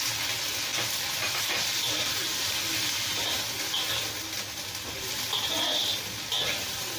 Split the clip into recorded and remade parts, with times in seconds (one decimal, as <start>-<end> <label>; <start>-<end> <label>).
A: 0.0-2.2 recorded; 2.2-3.1 remade; 3.1-7.0 recorded